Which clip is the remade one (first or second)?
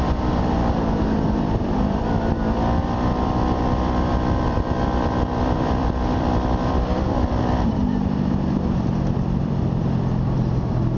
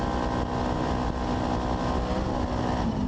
first